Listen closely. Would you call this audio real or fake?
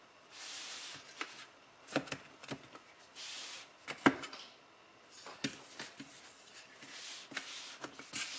real